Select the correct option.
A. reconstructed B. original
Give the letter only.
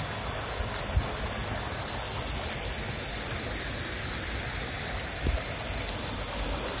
B